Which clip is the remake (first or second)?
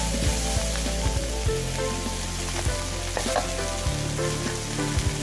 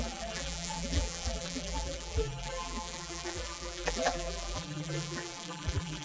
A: second